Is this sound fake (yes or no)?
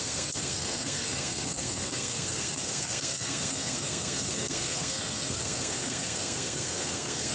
yes